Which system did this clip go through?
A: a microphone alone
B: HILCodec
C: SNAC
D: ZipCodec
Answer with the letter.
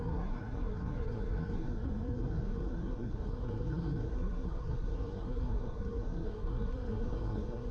C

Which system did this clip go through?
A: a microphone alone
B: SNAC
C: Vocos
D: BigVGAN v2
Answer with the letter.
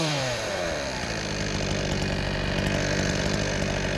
D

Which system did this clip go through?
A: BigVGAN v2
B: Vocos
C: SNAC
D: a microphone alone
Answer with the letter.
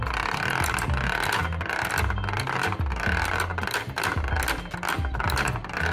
D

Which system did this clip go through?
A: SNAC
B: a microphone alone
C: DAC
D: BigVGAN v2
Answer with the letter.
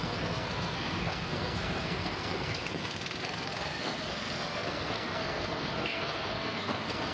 A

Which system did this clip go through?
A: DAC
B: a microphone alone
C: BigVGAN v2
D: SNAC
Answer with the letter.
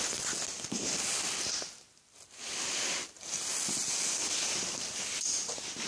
B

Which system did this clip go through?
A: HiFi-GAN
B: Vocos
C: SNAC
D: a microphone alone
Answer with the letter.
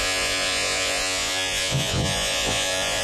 B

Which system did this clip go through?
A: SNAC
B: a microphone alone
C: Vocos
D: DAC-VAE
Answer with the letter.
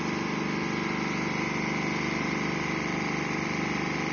B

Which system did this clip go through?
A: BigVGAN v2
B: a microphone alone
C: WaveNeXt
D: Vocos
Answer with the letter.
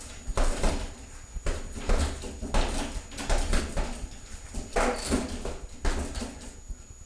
B